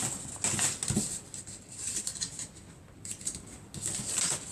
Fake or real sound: real